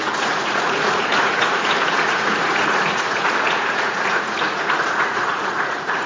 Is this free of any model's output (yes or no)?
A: no